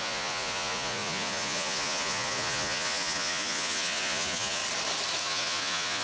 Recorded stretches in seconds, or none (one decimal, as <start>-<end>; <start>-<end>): 4.6-5.2